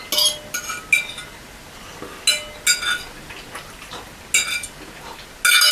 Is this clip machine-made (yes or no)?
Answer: no